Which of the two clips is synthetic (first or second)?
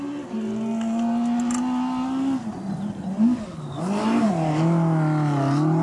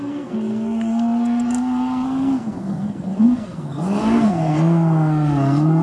second